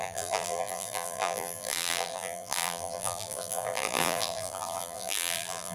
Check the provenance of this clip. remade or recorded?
remade